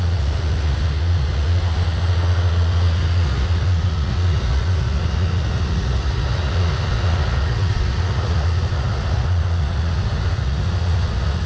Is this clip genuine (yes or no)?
no